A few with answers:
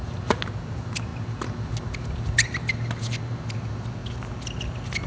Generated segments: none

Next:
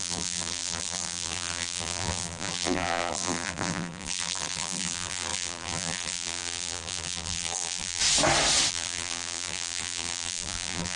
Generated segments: 0.0-8.0; 8.7-11.0